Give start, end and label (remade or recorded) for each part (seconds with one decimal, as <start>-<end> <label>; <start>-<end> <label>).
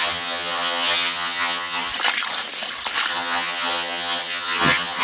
0.0-1.9 remade; 1.9-3.1 recorded; 3.1-5.0 remade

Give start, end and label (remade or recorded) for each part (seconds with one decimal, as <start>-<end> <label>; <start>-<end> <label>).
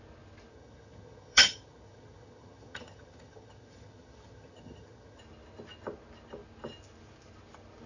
0.0-0.5 recorded; 0.5-5.2 remade; 5.2-7.9 recorded